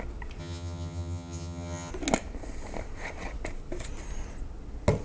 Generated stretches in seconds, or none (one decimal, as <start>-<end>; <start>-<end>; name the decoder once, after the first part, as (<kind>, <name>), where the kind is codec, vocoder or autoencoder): 0.4-1.9 (vocoder, HiFi-GAN)